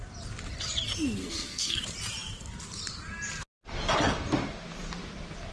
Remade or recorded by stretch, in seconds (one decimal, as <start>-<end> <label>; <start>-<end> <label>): 0.0-1.2 recorded; 1.2-1.8 remade; 1.8-5.5 recorded